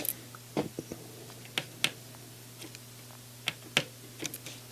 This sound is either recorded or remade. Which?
recorded